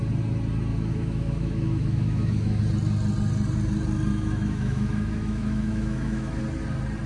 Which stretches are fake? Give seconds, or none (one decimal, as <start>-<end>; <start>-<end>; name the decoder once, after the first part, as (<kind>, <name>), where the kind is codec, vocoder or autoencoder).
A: 0.7-2.6 (autoencoder, DAC-VAE); 4.1-6.4